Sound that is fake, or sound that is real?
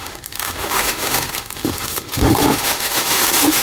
fake